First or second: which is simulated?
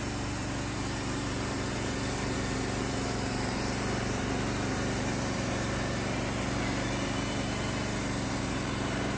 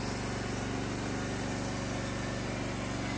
first